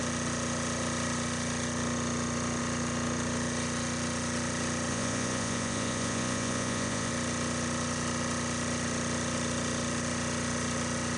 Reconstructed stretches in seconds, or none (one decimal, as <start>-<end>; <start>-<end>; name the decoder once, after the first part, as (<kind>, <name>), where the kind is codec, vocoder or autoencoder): 4.9-7.1 (vocoder, Vocos)

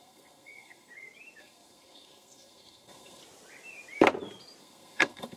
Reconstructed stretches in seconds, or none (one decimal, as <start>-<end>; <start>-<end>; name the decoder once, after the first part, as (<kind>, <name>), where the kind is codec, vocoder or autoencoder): 0.0-0.9 (codec, SNAC); 1.4-3.2; 4.6-5.4

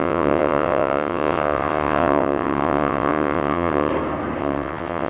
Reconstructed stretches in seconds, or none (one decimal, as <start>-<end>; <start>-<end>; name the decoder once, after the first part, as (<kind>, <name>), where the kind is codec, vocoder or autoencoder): 0.0-3.9 (vocoder, WaveNeXt); 4.4-5.1

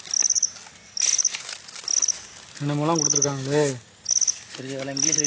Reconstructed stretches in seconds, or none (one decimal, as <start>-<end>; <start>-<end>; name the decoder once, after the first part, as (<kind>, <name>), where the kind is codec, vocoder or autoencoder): none

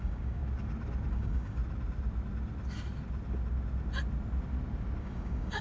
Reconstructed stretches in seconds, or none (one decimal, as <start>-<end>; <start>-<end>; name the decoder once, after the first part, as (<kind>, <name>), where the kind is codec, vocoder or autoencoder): 0.0-0.4 (codec, DAC); 1.1-1.6; 5.0-5.6

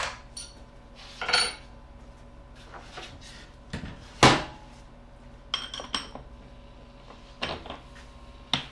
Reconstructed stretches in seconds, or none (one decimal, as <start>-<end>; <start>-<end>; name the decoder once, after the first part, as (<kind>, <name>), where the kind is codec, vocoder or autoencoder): none